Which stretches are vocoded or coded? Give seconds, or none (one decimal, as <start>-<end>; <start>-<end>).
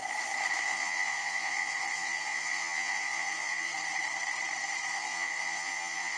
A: 0.6-3.7; 4.9-6.2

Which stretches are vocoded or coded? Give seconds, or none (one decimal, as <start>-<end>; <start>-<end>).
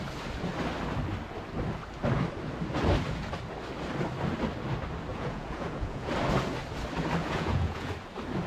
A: 5.1-6.1; 7.2-7.9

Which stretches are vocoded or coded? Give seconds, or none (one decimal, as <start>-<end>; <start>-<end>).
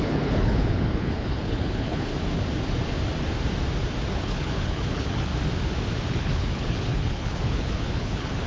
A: 0.0-2.1; 4.1-5.3; 6.1-8.5